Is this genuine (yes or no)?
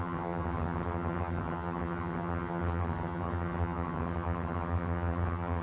no